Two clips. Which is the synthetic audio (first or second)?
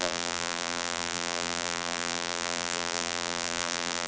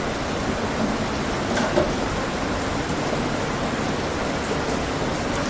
first